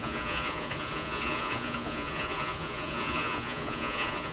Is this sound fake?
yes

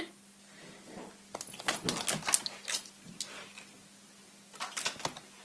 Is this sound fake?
no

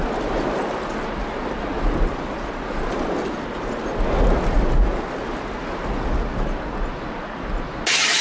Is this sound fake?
no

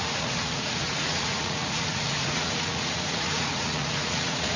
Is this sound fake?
yes